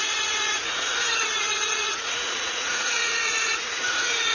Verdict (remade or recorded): remade